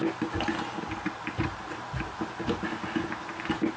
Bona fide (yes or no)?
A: yes